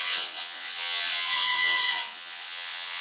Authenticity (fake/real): fake